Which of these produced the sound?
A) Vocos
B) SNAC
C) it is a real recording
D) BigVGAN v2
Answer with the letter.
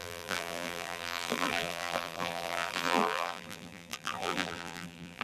D